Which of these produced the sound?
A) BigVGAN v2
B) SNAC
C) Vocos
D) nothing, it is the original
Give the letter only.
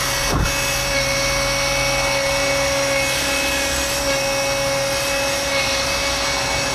D